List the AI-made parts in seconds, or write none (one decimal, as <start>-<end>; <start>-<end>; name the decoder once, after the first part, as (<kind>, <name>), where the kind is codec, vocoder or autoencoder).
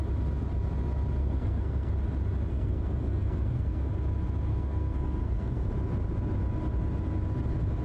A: 1.2-1.9 (codec, SNAC); 2.5-3.9; 4.5-5.7